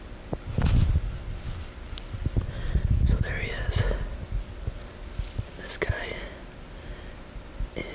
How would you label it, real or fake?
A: real